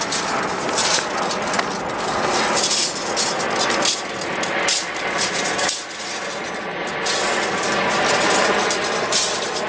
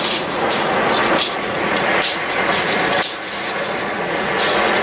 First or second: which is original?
first